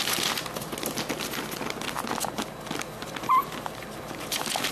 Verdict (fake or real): real